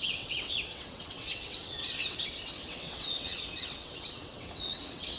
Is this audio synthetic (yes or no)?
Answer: yes